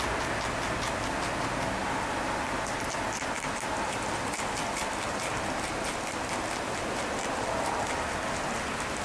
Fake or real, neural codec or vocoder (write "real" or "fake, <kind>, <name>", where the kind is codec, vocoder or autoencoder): real